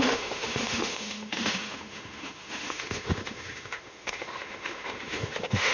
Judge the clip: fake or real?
fake